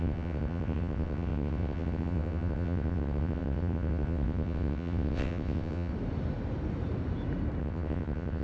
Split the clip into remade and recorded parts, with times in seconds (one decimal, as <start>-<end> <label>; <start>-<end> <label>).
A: 0.0-5.9 remade; 5.9-7.6 recorded; 7.6-8.4 remade